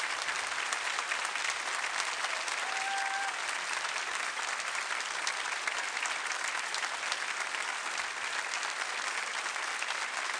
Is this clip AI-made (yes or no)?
no